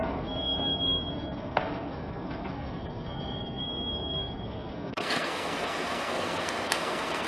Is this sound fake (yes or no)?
yes